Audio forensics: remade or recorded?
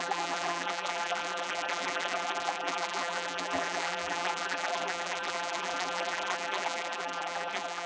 remade